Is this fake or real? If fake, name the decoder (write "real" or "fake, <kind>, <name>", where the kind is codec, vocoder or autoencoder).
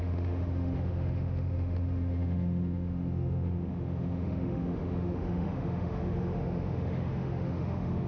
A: fake, autoencoder, DAC-VAE